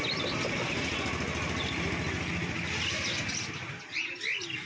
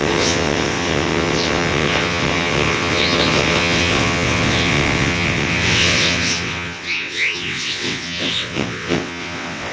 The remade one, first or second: second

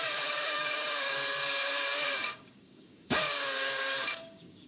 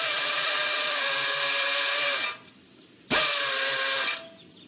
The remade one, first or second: first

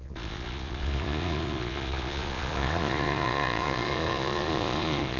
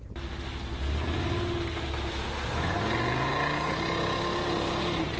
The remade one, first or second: first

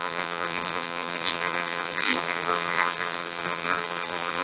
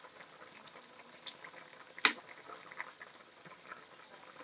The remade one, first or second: first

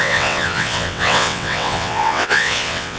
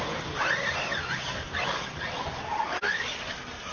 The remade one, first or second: first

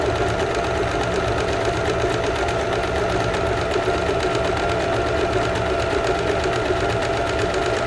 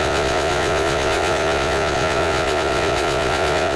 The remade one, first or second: second